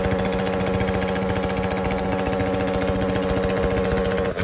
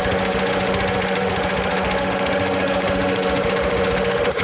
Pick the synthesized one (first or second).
second